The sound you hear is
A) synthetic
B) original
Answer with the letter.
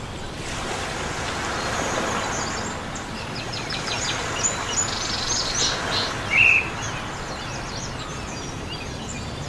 B